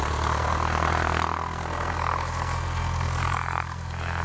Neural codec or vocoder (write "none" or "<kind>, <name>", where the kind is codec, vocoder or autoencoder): codec, SNAC